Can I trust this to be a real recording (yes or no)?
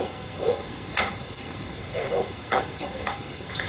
no